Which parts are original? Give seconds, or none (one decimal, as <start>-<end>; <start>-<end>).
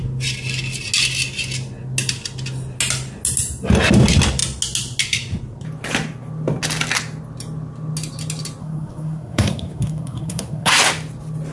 0.0-8.6; 10.7-11.5